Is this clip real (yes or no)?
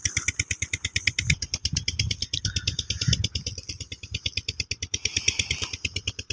yes